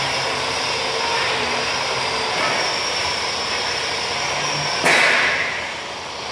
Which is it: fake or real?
fake